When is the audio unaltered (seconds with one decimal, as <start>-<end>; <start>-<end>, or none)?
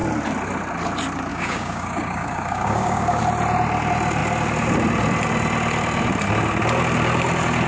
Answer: 0.0-1.3; 3.2-7.7